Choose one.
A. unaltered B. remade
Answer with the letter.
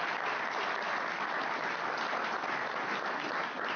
A